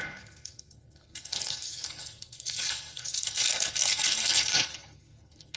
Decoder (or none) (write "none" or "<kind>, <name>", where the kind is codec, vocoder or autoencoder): codec, SNAC